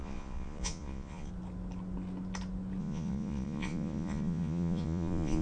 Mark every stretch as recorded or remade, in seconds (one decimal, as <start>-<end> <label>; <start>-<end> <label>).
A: 0.0-1.3 remade; 1.3-2.8 recorded; 2.8-5.4 remade